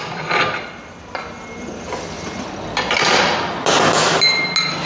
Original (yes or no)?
yes